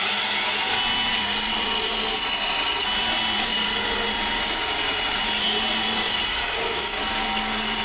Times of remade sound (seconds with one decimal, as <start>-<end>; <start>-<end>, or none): 6.4-7.0